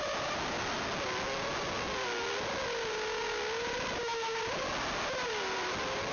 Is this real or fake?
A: real